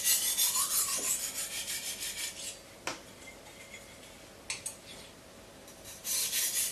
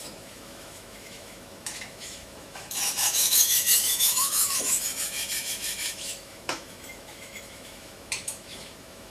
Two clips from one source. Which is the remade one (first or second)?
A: second